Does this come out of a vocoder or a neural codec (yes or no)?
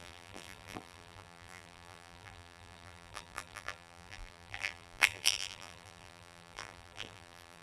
yes